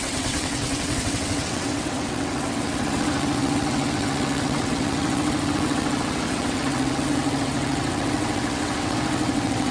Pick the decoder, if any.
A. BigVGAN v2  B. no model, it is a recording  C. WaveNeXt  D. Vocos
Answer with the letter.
C